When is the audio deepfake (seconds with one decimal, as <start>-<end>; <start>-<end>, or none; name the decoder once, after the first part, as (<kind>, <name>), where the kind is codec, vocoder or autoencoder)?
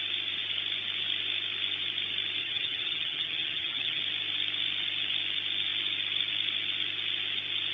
2.4-4.0 (vocoder, HiFi-GAN)